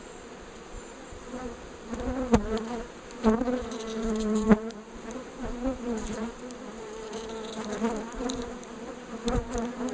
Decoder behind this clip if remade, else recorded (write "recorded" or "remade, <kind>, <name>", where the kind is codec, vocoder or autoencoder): remade, vocoder, BigVGAN v2